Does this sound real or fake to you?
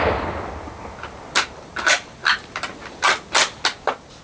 real